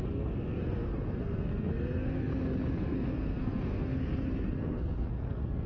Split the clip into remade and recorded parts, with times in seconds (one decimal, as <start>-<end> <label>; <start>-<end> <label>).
0.0-2.3 remade; 2.3-2.8 recorded; 2.8-5.7 remade